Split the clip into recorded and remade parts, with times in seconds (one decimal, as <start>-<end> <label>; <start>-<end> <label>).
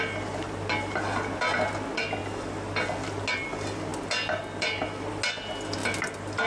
0.0-6.5 recorded